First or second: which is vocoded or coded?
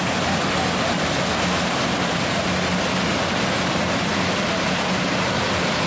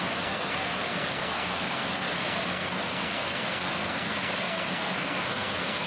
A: second